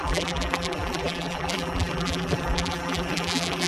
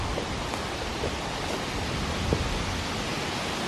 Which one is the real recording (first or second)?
second